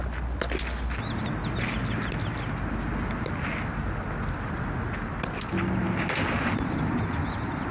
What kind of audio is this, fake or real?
real